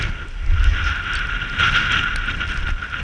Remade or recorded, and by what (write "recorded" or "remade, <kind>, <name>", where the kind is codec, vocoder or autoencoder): recorded